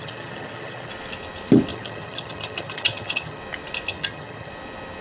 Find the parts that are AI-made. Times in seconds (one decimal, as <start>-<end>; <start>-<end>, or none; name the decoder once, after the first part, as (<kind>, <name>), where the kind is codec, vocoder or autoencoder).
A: 0.0-0.9 (vocoder, HiFi-GAN); 1.7-3.4; 3.9-4.5

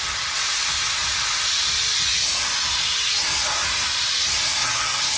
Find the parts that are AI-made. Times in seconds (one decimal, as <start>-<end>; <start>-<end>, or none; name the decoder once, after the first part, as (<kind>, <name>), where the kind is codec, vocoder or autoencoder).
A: 4.6-5.2 (vocoder, HiFi-GAN)

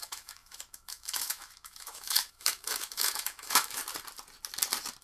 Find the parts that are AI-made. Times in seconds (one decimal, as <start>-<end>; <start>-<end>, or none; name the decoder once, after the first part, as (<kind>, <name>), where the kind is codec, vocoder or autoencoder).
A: 0.0-3.8 (autoencoder, DAC-VAE)

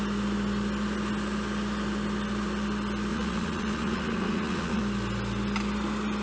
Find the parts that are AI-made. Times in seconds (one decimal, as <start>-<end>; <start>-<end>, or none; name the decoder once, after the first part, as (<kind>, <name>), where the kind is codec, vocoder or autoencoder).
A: 3.1-4.8 (vocoder, Vocos)

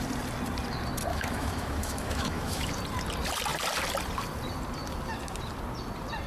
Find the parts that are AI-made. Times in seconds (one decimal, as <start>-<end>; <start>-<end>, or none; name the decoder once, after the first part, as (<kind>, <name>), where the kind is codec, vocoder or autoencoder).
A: 1.1-2.7 (autoencoder, DAC-VAE)